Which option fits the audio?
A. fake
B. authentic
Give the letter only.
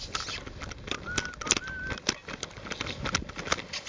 B